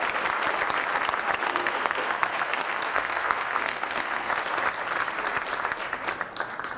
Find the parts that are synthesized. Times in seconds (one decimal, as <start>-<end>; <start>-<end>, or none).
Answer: 1.5-4.3